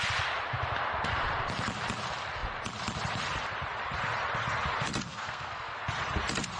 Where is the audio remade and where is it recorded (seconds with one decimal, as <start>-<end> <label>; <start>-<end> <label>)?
0.0-5.1 recorded; 5.1-5.7 remade; 5.7-6.6 recorded

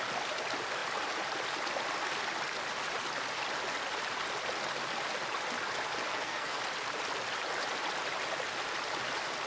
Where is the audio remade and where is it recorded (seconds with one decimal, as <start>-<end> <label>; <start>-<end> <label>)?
0.0-6.1 recorded; 6.1-6.6 remade; 6.6-9.5 recorded